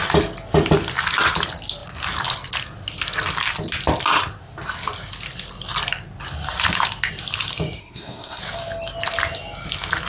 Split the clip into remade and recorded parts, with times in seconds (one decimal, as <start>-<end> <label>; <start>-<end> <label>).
0.0-7.8 recorded; 7.8-8.4 remade; 8.4-10.1 recorded